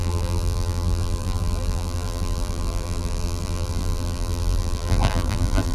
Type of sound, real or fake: fake